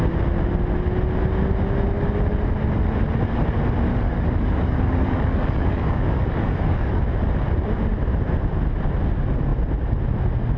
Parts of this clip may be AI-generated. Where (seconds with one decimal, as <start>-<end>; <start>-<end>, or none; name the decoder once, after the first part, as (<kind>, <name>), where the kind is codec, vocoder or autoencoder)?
3.9-7.0 (codec, DAC)